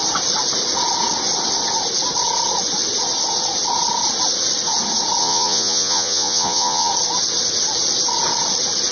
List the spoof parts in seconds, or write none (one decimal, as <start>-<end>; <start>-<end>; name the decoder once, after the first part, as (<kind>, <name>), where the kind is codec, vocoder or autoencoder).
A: 5.2-6.9 (vocoder, Vocos)